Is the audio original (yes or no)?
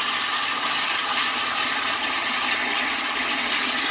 yes